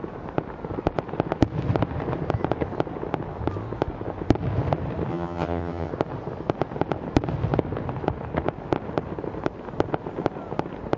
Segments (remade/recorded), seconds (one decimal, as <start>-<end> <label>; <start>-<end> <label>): 0.0-5.1 recorded; 5.1-5.9 remade; 5.9-11.0 recorded